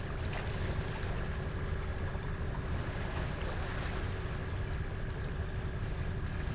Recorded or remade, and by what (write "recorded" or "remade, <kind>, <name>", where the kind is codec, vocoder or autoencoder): recorded